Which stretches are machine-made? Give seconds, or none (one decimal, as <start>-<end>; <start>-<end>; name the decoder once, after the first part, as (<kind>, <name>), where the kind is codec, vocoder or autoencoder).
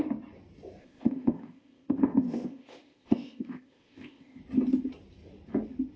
0.8-4.4 (codec, ZipCodec)